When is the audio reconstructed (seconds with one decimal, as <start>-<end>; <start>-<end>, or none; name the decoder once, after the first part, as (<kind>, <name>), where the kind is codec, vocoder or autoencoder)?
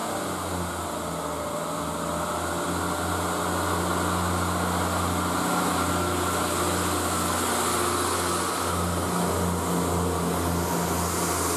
none